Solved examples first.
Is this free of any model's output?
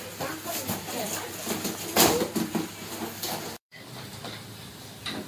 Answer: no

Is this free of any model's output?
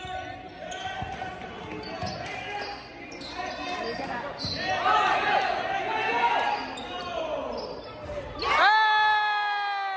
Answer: yes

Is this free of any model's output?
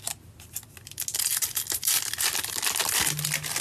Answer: yes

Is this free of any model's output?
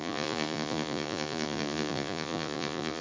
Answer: no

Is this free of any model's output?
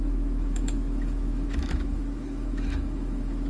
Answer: no